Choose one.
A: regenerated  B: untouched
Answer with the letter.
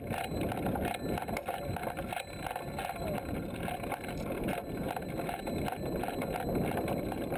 B